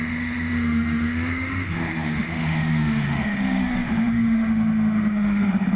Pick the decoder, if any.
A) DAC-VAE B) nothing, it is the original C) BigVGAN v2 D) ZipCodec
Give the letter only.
A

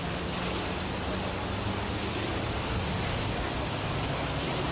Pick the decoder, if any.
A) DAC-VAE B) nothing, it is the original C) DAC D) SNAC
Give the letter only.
B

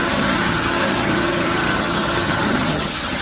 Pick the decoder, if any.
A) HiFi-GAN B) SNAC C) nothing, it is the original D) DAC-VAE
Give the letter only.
A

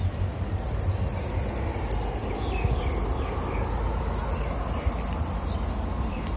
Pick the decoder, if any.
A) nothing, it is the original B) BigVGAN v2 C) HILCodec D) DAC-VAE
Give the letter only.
A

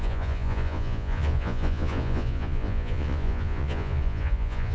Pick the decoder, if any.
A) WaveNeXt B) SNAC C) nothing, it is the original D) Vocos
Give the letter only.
D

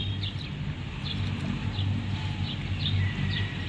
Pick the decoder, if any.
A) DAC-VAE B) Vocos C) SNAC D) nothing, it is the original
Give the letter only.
D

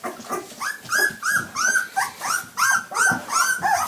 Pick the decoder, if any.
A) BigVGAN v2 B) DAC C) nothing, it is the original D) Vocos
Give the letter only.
C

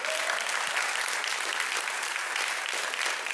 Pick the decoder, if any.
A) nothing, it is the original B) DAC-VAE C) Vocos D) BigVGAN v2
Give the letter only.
A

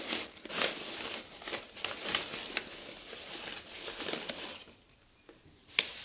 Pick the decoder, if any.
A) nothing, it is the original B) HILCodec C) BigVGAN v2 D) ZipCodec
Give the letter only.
A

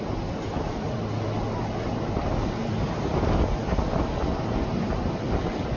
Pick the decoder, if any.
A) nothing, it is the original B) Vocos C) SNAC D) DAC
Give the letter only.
A